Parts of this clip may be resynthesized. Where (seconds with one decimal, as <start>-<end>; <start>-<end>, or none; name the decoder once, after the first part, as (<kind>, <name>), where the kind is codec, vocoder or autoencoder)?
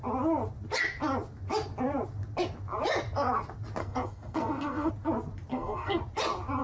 3.8-4.9 (codec, SNAC); 5.5-6.0